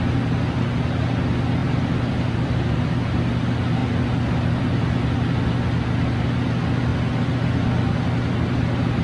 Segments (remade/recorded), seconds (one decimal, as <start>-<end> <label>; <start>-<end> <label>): 0.0-1.6 recorded; 1.6-2.9 remade; 2.9-3.8 recorded; 3.8-4.8 remade; 4.8-9.0 recorded